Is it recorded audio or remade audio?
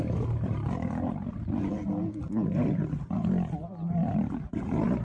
recorded